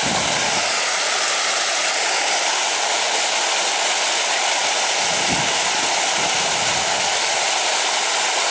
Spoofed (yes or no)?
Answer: no